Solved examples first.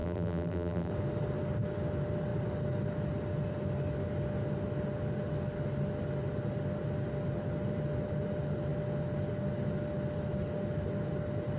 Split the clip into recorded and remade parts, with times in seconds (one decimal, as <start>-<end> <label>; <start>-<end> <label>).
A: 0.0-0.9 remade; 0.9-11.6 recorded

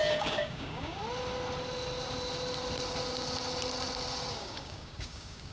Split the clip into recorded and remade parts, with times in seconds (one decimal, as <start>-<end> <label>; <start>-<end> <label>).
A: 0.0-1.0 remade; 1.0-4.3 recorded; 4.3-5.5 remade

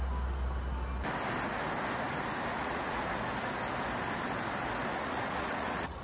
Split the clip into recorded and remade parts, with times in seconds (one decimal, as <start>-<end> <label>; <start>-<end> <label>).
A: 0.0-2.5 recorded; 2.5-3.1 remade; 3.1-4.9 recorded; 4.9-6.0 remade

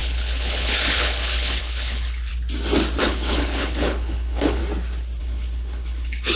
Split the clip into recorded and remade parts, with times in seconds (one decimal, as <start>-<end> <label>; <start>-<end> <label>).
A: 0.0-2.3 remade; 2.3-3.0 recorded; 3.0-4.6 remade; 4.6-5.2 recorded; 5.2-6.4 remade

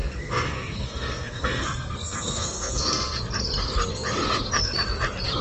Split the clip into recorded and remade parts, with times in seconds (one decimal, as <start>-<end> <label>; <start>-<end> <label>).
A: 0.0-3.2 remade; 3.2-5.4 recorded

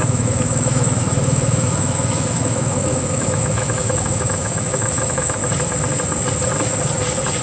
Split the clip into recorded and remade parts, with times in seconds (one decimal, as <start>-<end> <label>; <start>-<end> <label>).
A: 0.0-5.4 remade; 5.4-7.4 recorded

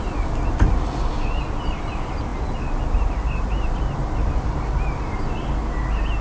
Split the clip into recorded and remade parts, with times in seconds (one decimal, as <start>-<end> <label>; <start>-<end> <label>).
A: 0.0-6.2 recorded